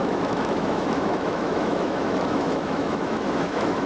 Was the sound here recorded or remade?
remade